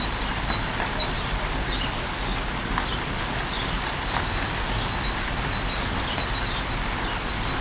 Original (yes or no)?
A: yes